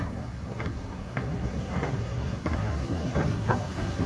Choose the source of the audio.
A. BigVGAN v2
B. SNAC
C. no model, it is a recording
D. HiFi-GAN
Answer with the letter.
B